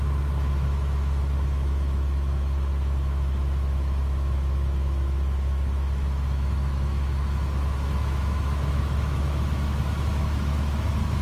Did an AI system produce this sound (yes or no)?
yes